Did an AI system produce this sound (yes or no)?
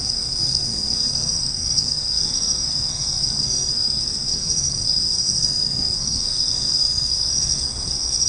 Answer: yes